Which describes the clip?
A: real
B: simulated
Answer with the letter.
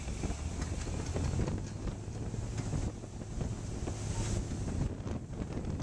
A